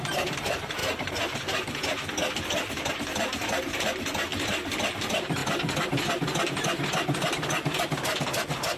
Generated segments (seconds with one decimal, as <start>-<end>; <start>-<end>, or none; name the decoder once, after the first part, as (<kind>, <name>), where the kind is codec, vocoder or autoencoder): 0.0-0.8 (vocoder, BigVGAN v2); 2.9-5.4; 7.8-8.8